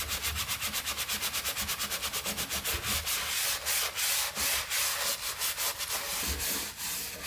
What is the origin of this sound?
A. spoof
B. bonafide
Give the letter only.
B